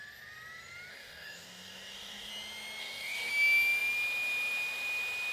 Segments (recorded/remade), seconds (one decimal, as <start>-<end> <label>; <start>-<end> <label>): 0.0-0.9 recorded; 0.9-2.3 remade; 2.3-2.8 recorded; 2.8-3.3 remade; 3.3-5.3 recorded